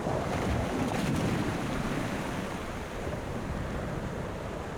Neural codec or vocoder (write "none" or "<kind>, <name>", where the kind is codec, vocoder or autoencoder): vocoder, BigVGAN v2